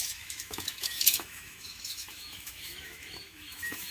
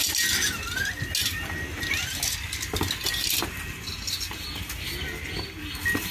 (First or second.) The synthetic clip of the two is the first